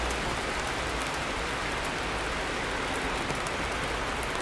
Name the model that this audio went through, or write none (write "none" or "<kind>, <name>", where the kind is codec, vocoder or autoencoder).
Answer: none